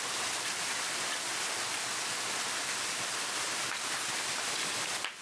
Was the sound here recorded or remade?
recorded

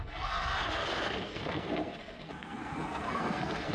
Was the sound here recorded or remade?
remade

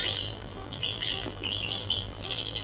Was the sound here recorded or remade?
remade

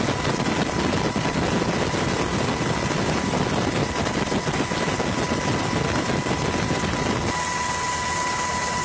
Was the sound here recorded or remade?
recorded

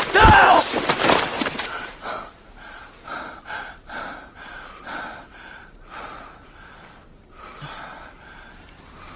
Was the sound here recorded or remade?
recorded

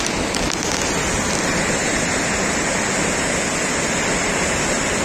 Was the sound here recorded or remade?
recorded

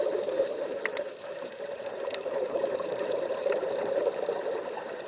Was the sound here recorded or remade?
remade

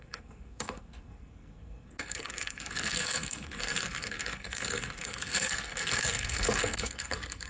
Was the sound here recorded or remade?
remade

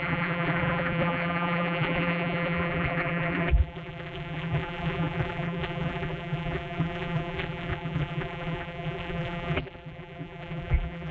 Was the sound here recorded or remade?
remade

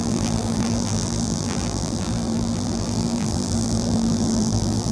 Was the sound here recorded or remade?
remade